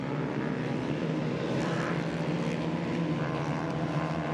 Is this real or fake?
fake